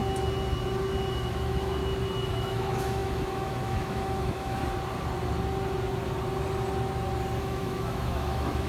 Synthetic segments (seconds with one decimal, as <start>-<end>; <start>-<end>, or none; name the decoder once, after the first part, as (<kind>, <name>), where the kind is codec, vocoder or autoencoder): 1.1-1.8 (autoencoder, DAC-VAE); 2.3-4.6; 7.4-8.7

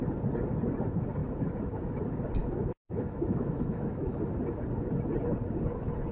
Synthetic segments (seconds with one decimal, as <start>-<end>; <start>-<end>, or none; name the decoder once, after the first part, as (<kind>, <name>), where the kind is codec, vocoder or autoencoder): 1.2-2.0 (autoencoder, DAC-VAE); 2.4-4.2

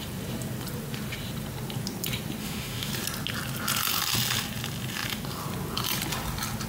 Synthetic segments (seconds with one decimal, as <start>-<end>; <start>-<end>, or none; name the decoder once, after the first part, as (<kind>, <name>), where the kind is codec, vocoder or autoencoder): 2.4-2.9 (autoencoder, DAC-VAE)